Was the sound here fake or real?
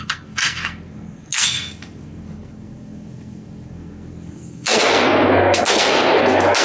fake